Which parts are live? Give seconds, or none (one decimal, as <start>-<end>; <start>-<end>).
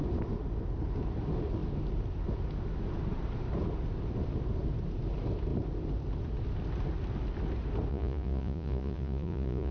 0.0-7.9